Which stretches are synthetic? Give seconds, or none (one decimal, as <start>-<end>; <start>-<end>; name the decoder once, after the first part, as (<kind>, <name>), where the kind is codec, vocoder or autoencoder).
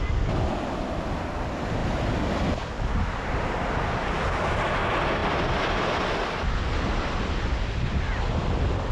none